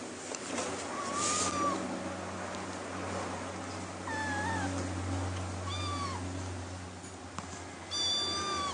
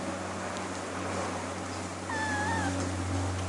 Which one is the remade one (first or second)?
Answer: second